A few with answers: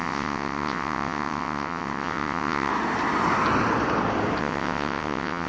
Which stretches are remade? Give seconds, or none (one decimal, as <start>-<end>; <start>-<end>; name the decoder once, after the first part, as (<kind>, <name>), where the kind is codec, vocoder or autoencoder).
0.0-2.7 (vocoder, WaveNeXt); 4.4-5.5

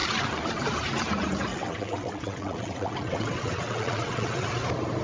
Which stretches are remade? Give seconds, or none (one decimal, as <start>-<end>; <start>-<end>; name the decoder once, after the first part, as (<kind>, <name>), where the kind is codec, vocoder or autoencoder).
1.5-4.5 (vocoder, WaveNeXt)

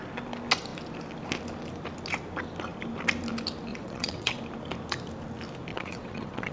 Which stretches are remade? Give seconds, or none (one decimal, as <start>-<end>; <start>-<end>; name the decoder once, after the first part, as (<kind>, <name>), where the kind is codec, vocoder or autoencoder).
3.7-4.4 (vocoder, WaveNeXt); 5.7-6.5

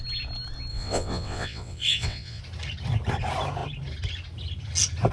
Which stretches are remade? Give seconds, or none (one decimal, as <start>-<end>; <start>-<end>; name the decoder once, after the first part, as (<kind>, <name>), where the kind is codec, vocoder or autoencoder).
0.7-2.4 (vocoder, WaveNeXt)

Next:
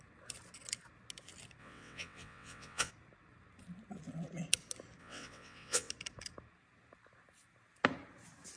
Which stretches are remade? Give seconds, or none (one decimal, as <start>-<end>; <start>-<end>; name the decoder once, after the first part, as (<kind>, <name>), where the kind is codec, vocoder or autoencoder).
1.6-2.9 (vocoder, WaveNeXt); 5.0-5.9

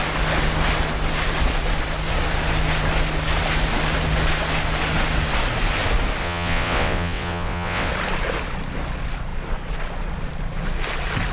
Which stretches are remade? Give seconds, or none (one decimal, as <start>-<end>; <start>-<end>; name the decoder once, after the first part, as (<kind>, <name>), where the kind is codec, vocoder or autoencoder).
6.2-7.9 (vocoder, WaveNeXt)

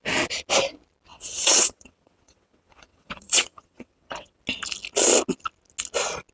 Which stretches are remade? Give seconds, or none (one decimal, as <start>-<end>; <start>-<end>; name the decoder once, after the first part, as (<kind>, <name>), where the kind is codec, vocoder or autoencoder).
1.1-4.4 (vocoder, WaveNeXt)